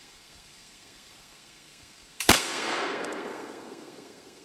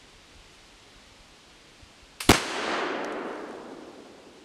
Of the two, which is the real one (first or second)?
second